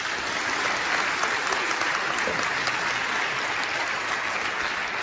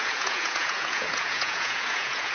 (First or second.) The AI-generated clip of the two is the second